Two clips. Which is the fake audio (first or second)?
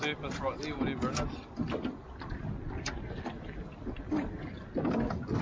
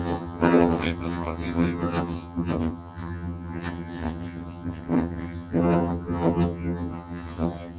second